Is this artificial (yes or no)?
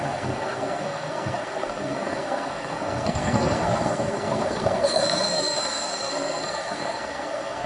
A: yes